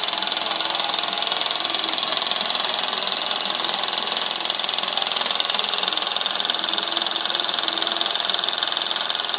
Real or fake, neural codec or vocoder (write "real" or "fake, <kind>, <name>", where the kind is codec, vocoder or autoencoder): real